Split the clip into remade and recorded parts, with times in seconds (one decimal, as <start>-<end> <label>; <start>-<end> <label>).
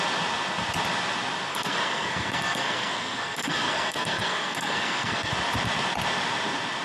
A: 0.0-1.5 recorded; 1.5-5.3 remade; 5.3-6.8 recorded